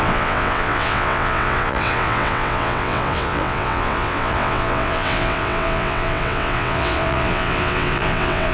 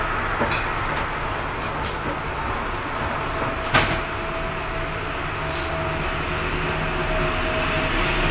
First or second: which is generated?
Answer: first